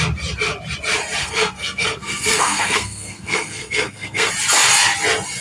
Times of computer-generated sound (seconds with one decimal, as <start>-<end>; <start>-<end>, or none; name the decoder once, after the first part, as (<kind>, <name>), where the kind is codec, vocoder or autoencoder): 1.2-4.3 (codec, SNAC)